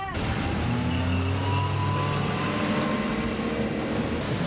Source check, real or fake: real